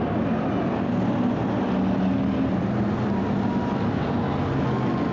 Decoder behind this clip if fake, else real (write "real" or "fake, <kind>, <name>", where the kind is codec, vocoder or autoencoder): real